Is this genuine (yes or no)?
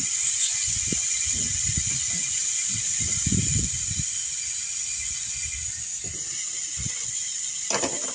yes